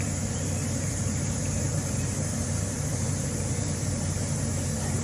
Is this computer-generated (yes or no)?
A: yes